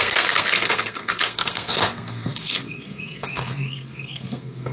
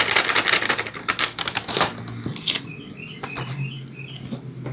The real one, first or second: second